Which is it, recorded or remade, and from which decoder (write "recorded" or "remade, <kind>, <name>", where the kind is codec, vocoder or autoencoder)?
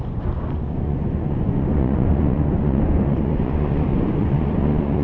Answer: remade, vocoder, Vocos